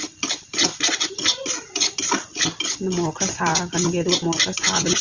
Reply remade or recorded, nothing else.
recorded